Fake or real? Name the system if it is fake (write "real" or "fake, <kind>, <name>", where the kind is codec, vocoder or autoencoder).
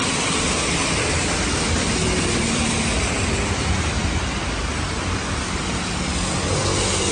real